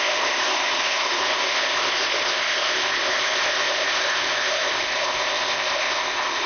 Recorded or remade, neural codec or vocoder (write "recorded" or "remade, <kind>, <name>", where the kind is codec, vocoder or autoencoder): remade, codec, ZipCodec